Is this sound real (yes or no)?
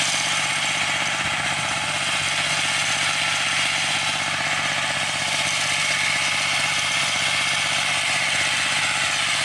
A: yes